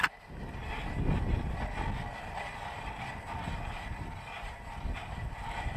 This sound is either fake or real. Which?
real